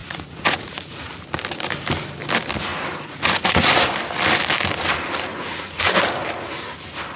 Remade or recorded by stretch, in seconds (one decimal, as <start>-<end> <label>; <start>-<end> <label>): 0.0-1.1 remade; 1.1-2.7 recorded; 2.7-3.7 remade; 3.7-5.3 recorded; 5.3-5.8 remade; 5.8-7.2 recorded